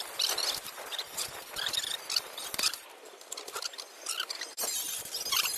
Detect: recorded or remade remade